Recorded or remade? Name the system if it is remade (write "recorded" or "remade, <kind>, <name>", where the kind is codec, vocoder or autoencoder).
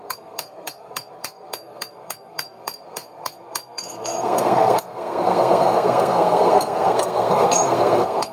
remade, codec, SNAC